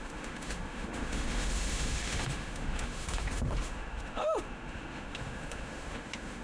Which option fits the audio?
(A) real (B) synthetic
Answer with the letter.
B